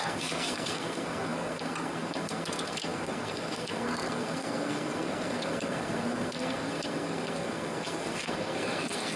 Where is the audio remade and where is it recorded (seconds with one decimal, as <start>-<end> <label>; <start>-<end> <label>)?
0.0-9.2 remade